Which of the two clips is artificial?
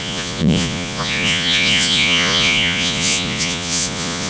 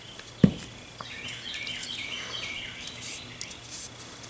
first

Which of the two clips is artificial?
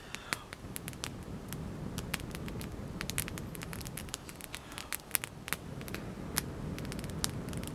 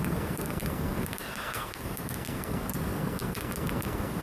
second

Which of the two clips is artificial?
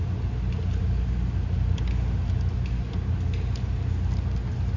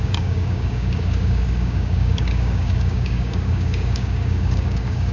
second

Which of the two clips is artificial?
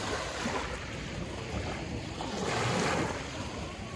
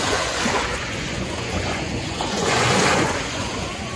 second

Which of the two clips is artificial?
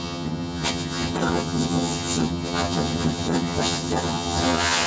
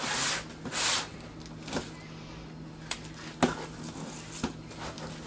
first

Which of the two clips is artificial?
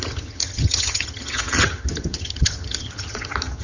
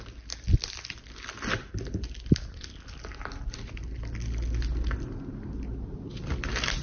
first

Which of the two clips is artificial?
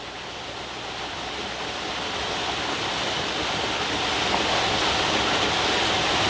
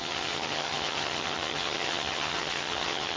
second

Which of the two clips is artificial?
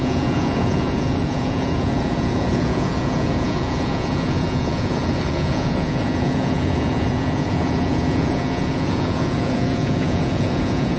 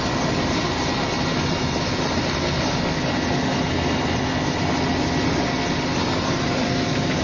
first